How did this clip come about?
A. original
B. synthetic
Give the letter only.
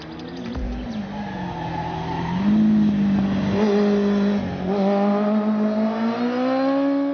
A